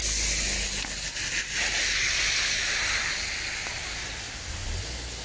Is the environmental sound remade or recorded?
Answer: recorded